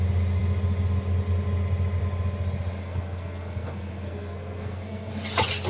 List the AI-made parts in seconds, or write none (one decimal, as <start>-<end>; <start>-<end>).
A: 2.8-5.1